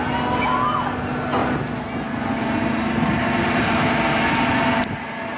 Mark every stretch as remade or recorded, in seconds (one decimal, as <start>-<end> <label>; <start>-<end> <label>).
0.0-5.4 recorded